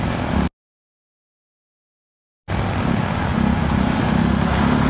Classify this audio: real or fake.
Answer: real